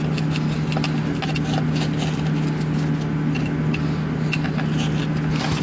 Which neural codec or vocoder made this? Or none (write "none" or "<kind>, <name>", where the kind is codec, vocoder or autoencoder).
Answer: none